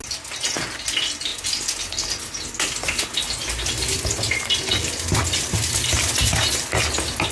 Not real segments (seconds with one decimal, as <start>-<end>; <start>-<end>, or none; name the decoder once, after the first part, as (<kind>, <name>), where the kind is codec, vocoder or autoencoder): none